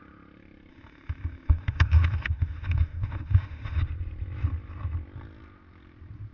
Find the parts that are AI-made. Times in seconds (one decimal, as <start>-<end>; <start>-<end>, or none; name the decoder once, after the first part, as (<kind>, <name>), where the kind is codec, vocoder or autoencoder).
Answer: 0.7-3.8 (autoencoder, DAC-VAE)